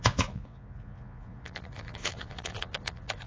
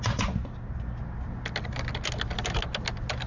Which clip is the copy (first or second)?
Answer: first